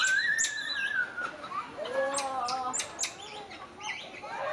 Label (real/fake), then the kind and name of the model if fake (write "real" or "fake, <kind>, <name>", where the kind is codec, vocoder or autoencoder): real